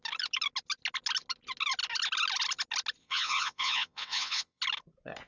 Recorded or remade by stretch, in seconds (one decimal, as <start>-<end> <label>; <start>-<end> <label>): 0.0-3.0 recorded; 3.0-4.6 remade; 4.6-5.3 recorded